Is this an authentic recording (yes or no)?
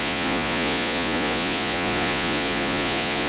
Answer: no